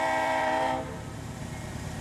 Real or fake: fake